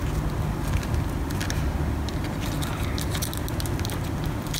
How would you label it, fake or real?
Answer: real